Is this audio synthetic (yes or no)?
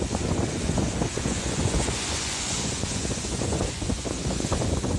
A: yes